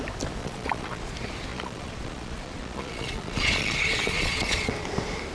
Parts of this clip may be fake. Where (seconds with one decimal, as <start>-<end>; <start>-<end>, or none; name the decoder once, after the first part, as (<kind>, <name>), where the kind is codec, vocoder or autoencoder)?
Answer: 0.4-1.1 (vocoder, Vocos); 1.5-4.7